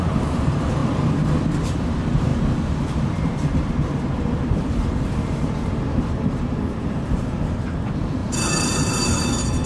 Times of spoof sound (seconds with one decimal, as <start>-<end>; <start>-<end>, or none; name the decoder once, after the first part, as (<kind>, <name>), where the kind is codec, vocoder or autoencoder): 0.0-9.7 (vocoder, BigVGAN v2)